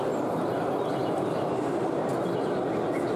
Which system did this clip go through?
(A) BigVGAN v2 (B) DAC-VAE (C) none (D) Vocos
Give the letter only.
C